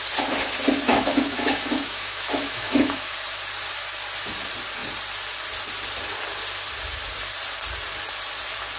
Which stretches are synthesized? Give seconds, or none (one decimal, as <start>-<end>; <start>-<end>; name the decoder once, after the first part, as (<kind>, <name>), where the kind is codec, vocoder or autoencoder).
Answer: 0.9-3.1 (autoencoder, DAC-VAE)

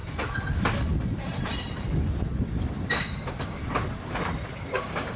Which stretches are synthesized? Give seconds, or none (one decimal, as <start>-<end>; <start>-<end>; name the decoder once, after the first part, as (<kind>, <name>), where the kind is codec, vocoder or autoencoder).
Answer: 2.9-3.6 (codec, DAC); 4.7-5.2

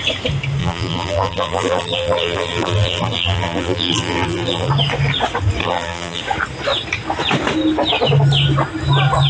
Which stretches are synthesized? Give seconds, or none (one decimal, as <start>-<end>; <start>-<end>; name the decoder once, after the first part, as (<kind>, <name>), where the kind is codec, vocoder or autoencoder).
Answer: 0.6-4.7 (vocoder, BigVGAN v2); 5.6-6.2

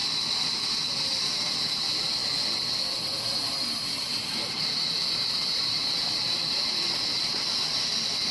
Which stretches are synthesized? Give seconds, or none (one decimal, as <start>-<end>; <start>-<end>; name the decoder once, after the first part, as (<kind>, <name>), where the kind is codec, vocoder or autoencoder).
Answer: none

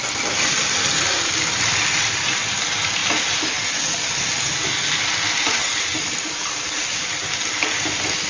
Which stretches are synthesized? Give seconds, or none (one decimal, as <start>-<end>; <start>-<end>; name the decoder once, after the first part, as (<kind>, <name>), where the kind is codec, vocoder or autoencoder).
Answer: none

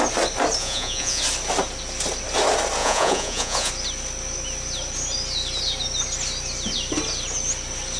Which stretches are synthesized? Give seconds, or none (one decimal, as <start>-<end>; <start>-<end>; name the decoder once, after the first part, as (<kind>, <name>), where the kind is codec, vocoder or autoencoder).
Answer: 0.6-1.2 (vocoder, Vocos); 2.8-3.7

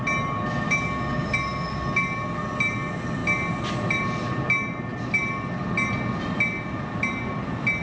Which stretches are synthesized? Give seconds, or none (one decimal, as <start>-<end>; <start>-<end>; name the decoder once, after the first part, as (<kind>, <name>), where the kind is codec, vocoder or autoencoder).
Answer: none